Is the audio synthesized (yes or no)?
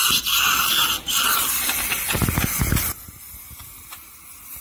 no